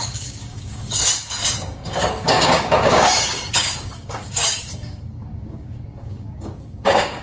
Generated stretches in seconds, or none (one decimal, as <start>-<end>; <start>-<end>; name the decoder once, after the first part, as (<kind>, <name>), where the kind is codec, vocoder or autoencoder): 0.0-7.2 (codec, DAC)